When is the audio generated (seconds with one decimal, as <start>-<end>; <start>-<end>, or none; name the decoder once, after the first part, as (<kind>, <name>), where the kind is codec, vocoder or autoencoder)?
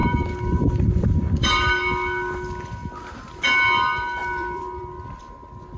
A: 0.0-1.6 (vocoder, BigVGAN v2); 4.2-5.2